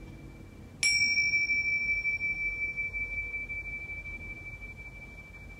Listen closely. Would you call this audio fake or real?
real